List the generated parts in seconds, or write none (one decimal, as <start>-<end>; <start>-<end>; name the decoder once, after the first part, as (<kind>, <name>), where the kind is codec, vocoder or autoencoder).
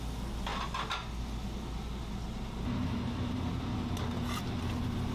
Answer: none